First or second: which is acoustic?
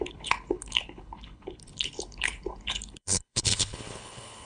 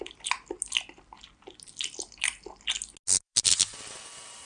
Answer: second